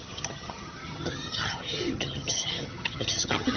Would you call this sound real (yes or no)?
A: no